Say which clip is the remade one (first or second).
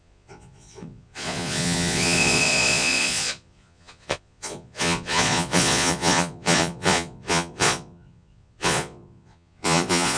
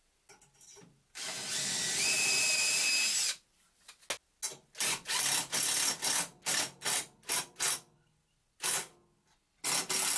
first